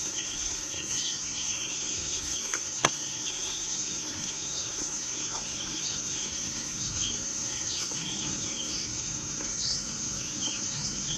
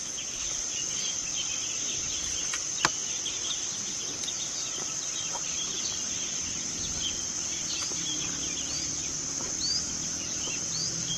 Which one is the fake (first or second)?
first